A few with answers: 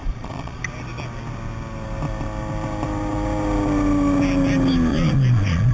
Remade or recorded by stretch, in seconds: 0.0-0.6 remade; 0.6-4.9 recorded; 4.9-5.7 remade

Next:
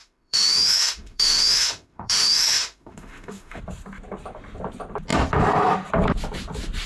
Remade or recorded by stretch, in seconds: 0.0-3.6 remade; 3.6-6.9 recorded

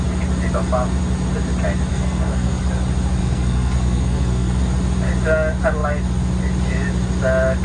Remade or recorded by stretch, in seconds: 0.0-1.9 recorded; 1.9-2.6 remade; 2.6-3.2 recorded; 3.2-4.6 remade; 4.6-7.6 recorded